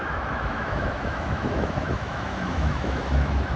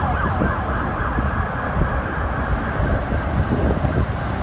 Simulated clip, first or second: first